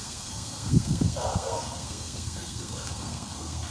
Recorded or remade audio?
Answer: remade